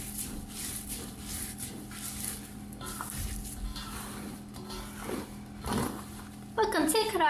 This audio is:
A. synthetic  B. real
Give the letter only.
A